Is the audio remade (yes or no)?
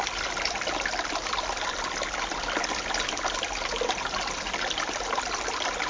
no